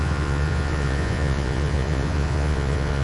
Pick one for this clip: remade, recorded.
remade